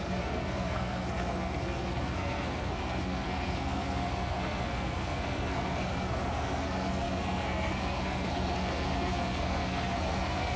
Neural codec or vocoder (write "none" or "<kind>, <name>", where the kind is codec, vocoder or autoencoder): codec, SNAC